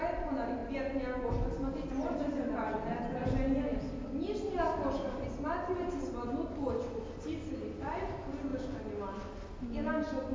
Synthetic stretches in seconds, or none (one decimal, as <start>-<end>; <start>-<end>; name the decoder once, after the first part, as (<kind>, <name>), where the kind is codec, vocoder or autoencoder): none